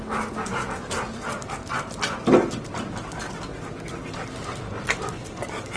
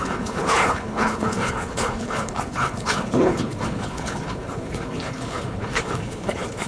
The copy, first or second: second